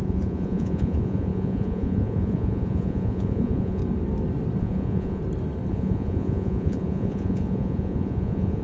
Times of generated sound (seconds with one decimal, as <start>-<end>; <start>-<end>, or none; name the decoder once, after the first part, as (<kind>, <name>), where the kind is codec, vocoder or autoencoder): 0.0-3.8 (vocoder, Vocos); 4.6-5.2; 5.7-8.6